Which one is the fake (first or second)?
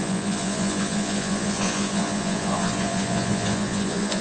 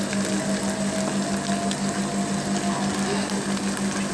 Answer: first